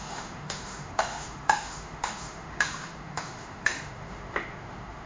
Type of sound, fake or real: fake